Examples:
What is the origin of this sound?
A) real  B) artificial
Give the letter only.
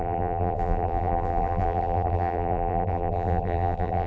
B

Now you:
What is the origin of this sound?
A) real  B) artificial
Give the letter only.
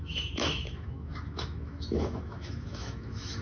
B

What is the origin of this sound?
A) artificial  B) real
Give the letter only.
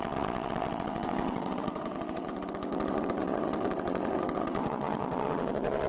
A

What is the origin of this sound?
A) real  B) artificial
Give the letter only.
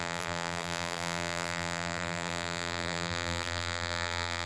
B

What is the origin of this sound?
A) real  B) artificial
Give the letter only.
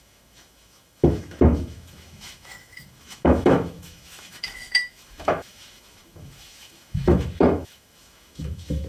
B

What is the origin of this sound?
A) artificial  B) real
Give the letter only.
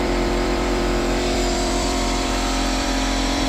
A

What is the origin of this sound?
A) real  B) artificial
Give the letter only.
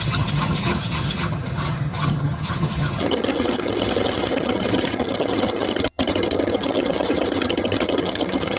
B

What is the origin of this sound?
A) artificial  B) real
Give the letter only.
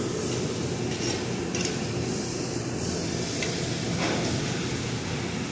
B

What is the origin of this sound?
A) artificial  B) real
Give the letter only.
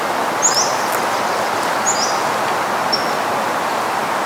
B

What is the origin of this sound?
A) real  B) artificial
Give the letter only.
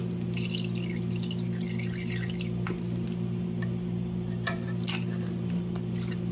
A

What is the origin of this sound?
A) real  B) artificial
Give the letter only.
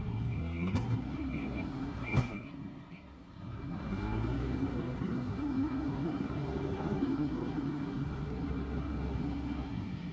B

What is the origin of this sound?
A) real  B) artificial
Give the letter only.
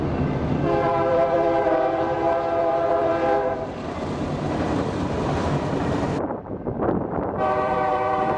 B